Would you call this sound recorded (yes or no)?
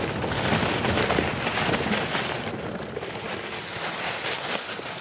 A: yes